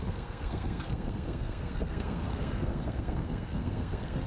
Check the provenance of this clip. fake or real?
fake